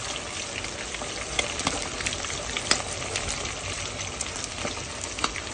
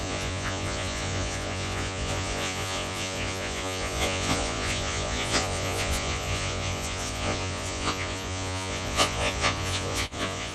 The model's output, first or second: second